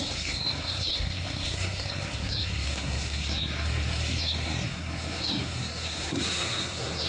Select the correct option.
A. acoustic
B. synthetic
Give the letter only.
B